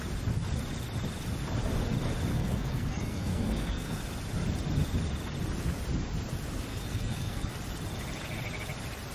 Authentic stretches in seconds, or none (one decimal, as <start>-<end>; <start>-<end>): 0.0-2.3; 4.0-6.7; 7.5-9.1